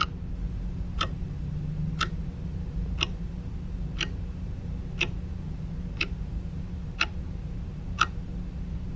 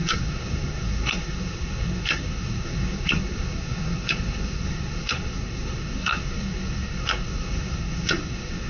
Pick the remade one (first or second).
second